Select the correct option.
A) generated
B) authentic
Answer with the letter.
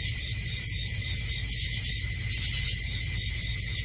B